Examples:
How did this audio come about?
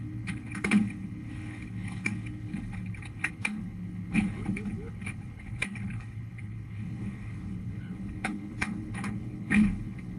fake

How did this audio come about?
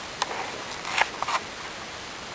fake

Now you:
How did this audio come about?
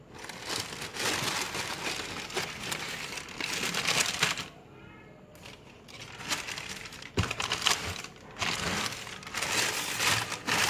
real